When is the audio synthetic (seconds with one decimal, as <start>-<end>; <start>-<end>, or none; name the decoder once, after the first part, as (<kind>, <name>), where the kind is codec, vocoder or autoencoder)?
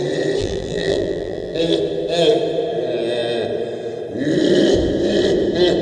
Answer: 0.4-1.6 (vocoder, BigVGAN v2)